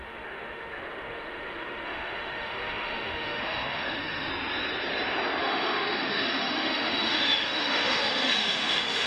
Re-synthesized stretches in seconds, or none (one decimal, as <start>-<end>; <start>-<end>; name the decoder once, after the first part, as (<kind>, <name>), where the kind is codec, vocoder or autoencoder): 0.0-4.3 (autoencoder, DAC-VAE); 5.4-9.1